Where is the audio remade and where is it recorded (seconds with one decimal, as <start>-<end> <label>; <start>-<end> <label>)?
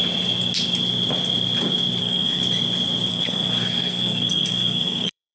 0.0-2.0 recorded; 2.0-2.4 remade; 2.4-3.1 recorded; 3.1-5.3 remade